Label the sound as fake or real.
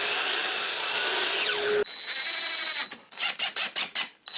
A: real